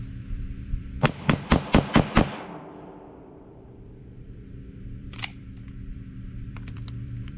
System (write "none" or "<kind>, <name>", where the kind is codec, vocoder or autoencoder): vocoder, BigVGAN v2